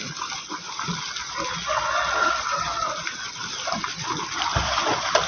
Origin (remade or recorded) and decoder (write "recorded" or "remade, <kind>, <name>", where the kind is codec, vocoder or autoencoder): recorded